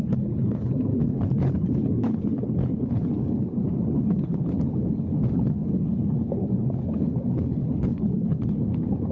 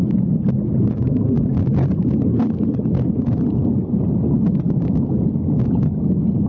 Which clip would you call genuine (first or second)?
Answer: second